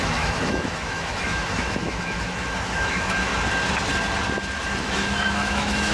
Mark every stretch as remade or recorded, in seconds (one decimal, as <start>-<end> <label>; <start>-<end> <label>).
0.0-3.3 remade; 3.3-4.8 recorded; 4.8-5.9 remade